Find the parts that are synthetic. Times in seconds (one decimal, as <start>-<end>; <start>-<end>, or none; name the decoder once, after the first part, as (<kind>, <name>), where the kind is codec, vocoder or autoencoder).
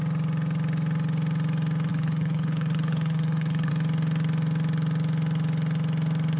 1.9-3.7 (codec, HILCodec)